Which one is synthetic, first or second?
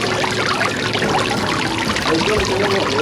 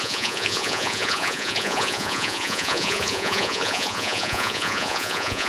second